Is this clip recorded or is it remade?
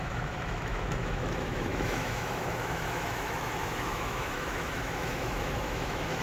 remade